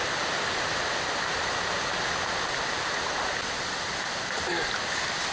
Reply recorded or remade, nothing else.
recorded